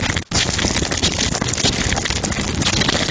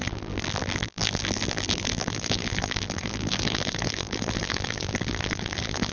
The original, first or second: first